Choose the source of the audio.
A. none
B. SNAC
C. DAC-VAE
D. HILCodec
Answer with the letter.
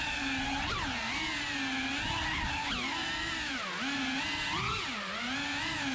A